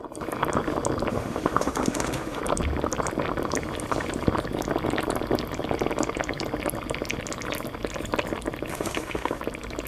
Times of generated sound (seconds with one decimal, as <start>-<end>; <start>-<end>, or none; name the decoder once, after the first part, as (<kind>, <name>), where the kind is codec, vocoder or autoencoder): 1.1-2.4 (autoencoder, DAC-VAE); 8.7-9.4